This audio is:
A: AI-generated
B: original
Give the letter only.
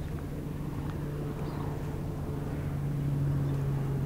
B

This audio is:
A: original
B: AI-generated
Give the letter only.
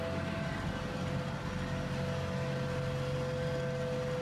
A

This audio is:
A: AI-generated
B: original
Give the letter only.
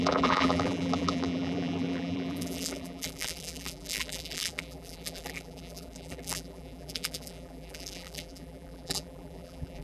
A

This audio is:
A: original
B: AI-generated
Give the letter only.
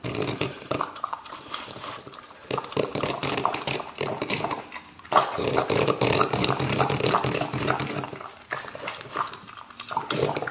B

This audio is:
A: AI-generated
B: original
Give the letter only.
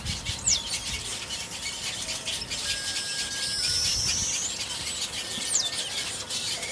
B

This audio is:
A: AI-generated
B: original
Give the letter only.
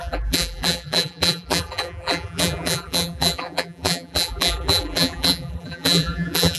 A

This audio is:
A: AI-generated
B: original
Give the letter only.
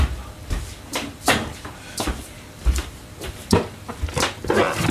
A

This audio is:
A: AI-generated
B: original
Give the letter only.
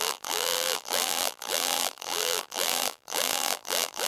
A